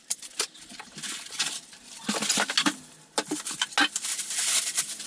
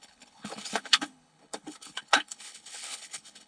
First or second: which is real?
first